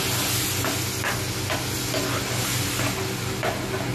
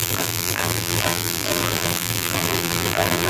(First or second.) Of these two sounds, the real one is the first